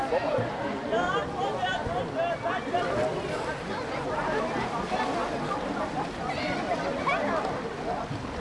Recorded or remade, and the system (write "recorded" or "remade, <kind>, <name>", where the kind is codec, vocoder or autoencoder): recorded